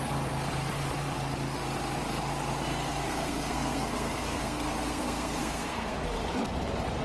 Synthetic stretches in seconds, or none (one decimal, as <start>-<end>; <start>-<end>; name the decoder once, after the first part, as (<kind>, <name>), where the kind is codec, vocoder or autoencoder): 2.8-6.0 (codec, SNAC)

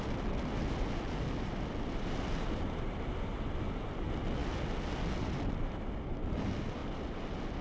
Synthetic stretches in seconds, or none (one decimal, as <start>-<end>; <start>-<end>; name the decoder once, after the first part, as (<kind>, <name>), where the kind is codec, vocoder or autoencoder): none

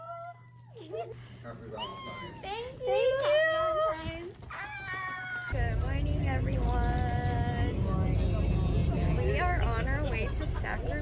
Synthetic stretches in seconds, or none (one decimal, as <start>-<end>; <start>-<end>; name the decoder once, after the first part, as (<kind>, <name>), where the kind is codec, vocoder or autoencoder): none

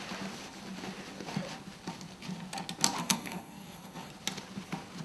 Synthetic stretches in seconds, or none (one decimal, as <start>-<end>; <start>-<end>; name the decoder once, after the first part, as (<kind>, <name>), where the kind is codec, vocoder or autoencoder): 3.0-4.1 (codec, SNAC)

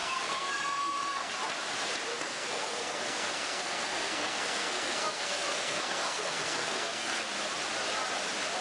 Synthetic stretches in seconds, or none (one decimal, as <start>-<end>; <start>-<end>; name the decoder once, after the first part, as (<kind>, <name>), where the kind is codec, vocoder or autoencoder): 0.0-1.3 (codec, SNAC); 2.1-7.3

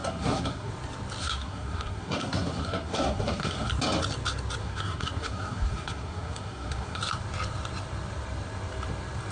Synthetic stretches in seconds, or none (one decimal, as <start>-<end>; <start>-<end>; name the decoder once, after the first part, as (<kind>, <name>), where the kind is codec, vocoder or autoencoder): 0.0-0.7 (codec, SNAC); 1.2-3.7; 4.6-7.0